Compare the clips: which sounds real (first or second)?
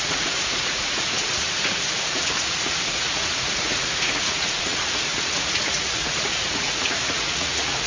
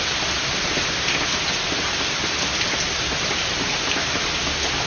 second